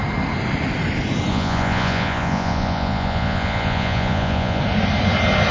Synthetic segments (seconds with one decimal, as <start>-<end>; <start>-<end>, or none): 1.3-4.6